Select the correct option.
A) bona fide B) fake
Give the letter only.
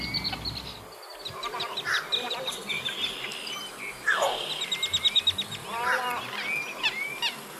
A